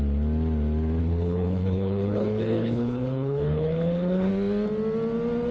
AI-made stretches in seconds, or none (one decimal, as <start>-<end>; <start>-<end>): 1.0-4.3